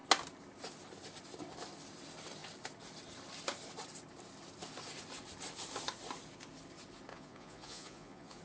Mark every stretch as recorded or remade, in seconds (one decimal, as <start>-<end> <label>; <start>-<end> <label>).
0.0-7.1 recorded; 7.1-8.4 remade